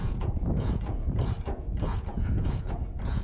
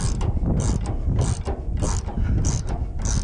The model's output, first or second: first